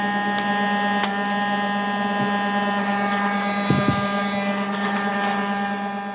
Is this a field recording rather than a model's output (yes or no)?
yes